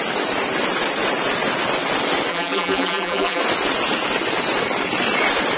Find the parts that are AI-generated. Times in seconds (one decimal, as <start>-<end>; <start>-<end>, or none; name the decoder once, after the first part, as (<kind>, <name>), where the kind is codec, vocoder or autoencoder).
2.3-3.4 (vocoder, BigVGAN v2)